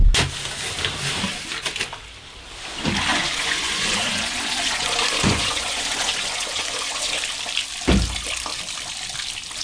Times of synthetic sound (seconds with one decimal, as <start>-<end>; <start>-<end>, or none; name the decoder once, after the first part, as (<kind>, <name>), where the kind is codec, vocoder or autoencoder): 3.1-7.2 (vocoder, Vocos)